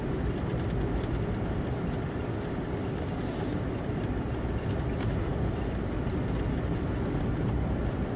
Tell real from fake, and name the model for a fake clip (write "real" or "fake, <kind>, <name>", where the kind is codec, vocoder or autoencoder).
real